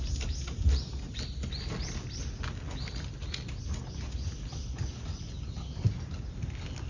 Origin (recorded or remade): recorded